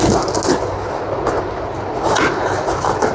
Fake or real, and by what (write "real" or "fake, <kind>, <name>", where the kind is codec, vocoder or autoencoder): real